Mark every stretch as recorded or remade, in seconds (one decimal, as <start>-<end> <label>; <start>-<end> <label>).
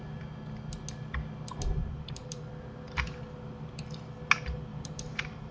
0.0-1.8 recorded; 1.8-2.5 remade; 2.5-4.7 recorded; 4.7-5.5 remade